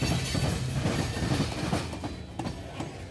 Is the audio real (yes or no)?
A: yes